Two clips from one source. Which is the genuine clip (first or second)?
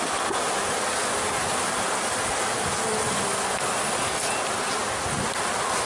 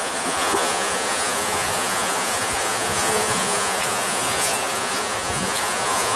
first